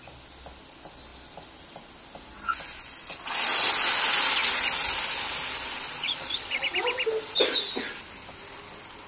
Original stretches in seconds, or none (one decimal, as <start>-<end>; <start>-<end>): 0.0-5.9; 6.6-9.1